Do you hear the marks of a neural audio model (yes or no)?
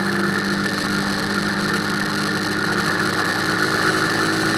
no